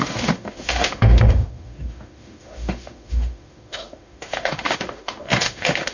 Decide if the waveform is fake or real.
fake